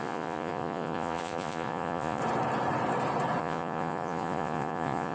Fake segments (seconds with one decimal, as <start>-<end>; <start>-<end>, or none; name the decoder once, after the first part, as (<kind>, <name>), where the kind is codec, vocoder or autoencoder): 0.0-2.2 (vocoder, Vocos); 3.4-5.1